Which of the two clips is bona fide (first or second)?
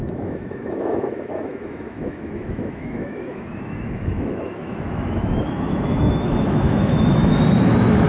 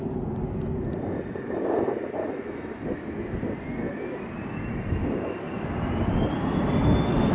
second